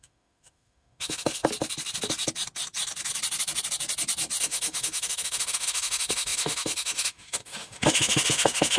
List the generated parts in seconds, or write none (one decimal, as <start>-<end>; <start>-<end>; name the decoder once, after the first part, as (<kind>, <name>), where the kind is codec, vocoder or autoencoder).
0.0-1.4 (autoencoder, DAC-VAE); 4.4-8.8